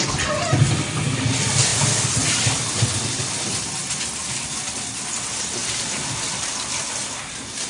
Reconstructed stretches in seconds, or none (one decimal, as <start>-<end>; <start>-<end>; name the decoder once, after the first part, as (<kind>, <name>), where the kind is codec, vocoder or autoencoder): none